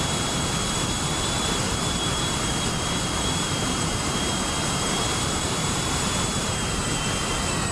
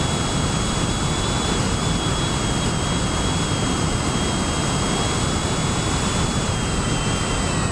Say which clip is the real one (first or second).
second